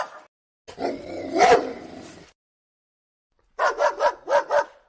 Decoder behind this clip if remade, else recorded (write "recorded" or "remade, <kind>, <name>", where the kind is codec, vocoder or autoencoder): recorded